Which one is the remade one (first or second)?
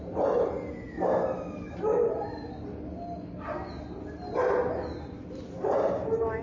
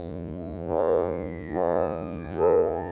second